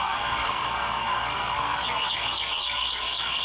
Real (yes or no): no